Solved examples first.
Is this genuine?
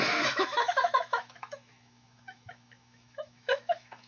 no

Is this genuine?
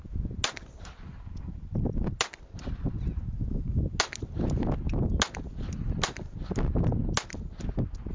yes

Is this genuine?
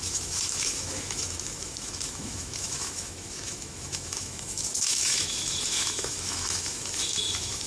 no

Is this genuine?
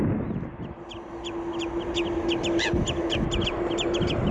yes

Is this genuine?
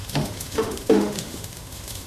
no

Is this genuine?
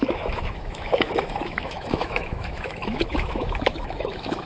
no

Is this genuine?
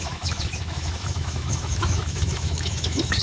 no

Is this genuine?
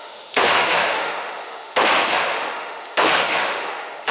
no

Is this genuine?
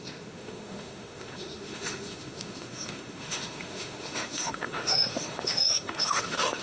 no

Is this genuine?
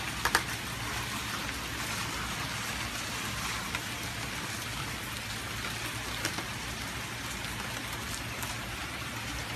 yes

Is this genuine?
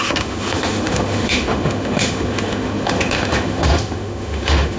no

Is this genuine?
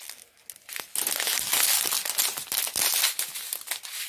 yes